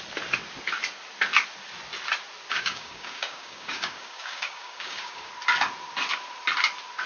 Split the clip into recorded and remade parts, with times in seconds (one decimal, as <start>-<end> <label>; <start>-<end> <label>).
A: 0.0-2.5 recorded; 2.5-5.3 remade; 5.3-7.1 recorded